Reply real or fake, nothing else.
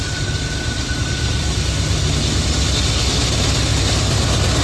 real